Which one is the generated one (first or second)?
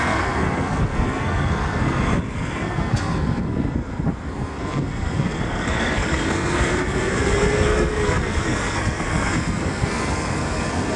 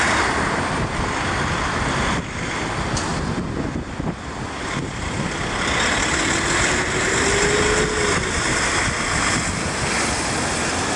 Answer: first